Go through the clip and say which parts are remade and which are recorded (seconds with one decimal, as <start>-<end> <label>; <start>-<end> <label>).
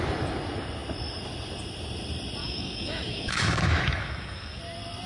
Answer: 0.0-2.4 recorded; 2.4-4.6 remade; 4.6-5.1 recorded